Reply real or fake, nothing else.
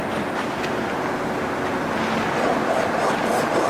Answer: real